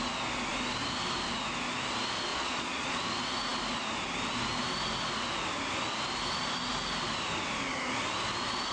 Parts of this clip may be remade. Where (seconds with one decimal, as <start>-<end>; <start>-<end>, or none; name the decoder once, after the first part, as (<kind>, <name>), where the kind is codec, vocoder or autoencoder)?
2.3-3.0 (vocoder, Vocos)